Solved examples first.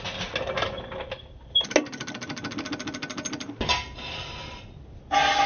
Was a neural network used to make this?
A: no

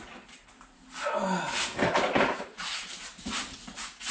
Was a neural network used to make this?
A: no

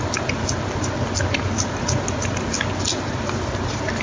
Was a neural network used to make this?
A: no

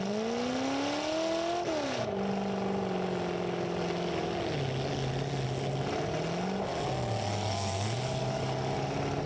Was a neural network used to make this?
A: no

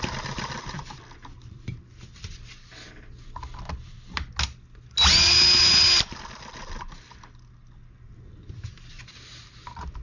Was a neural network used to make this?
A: no